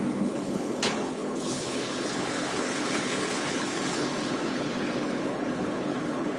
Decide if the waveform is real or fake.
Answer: fake